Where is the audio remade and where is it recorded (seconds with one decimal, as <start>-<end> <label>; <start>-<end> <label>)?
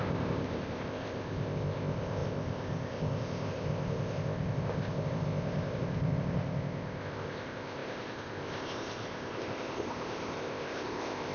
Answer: 0.0-11.3 remade